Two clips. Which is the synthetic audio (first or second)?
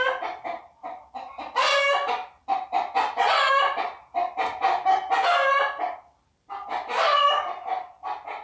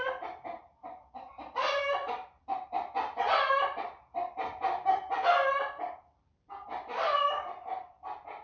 second